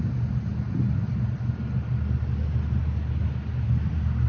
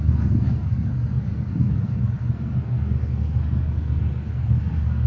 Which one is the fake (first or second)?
second